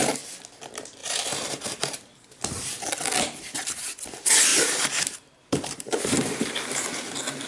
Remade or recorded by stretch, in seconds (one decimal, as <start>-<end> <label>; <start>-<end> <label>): 0.0-1.0 recorded; 1.0-2.7 remade; 2.7-4.5 recorded; 4.5-6.5 remade; 6.5-7.5 recorded